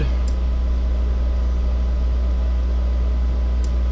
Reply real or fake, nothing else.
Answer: real